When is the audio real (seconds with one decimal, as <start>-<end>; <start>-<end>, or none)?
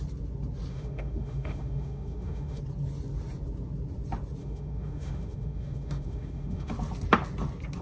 0.0-0.7; 2.6-4.4; 6.7-7.8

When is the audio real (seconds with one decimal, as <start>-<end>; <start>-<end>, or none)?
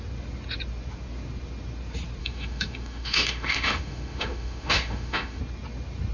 0.0-2.2; 5.4-6.1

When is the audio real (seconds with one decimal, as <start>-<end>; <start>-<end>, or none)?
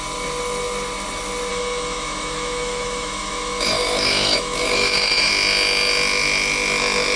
0.0-1.5; 5.3-7.2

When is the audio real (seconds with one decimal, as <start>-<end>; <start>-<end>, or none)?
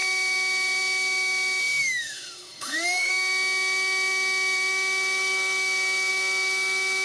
0.0-1.6; 3.1-7.0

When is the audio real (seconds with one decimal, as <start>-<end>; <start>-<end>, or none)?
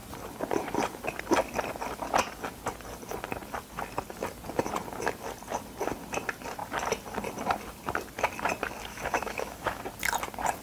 0.0-8.9; 9.8-10.6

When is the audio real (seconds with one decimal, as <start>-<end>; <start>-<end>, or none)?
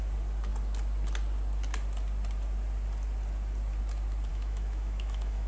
0.0-4.3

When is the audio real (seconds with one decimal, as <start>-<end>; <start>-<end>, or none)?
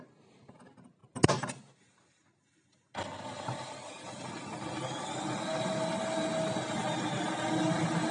0.0-8.1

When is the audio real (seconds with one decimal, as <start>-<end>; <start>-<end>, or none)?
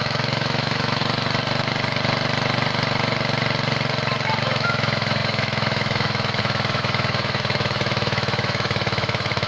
1.0-4.4